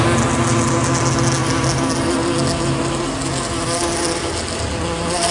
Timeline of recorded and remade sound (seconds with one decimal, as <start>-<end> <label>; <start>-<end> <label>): 0.0-5.3 recorded